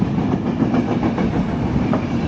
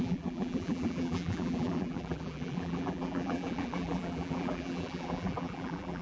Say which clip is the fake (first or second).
second